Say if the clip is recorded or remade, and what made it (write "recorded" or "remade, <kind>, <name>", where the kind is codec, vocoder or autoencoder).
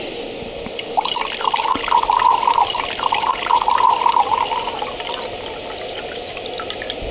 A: recorded